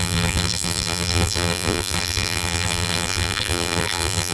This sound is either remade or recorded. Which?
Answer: remade